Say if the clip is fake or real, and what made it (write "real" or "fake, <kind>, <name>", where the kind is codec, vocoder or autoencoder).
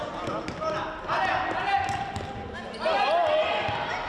real